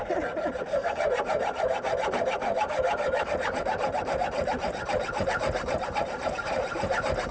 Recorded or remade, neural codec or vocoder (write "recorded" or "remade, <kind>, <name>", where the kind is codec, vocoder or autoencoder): remade, vocoder, BigVGAN v2